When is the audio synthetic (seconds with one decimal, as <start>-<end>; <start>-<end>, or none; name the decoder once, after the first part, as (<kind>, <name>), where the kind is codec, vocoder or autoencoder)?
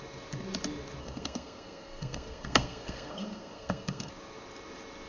1.0-4.1 (codec, SNAC)